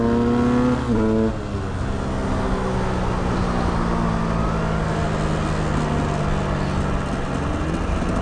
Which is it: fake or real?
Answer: real